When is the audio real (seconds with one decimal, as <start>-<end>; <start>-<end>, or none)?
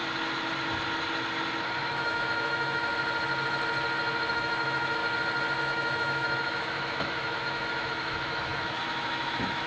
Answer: 0.0-1.9; 2.9-4.3; 5.0-5.6